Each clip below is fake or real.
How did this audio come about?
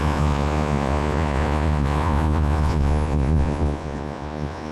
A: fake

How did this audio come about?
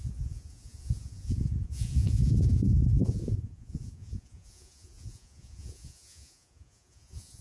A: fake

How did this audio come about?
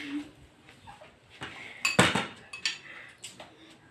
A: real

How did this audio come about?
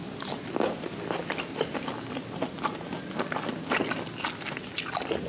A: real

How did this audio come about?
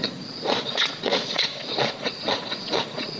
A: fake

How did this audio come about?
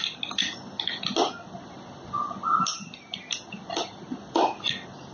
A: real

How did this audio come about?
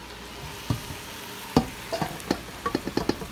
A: real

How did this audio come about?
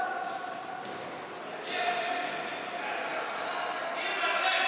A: real